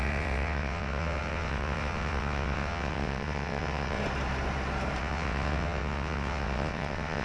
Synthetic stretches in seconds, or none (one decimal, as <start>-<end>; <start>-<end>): 0.0-4.0; 5.0-7.2